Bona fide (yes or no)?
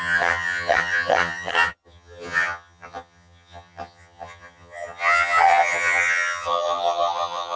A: no